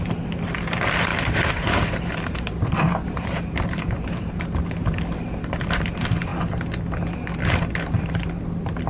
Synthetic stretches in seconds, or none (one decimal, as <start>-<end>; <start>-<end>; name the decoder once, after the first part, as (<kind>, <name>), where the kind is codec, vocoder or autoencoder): 1.1-4.4 (vocoder, BigVGAN v2)